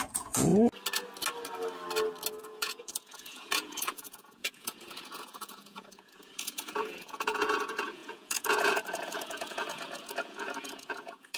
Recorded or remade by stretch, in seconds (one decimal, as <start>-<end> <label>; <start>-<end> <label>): 0.0-0.5 remade; 0.5-2.4 recorded; 2.4-11.4 remade